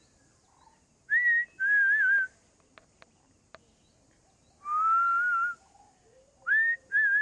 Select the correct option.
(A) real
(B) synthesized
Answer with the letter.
A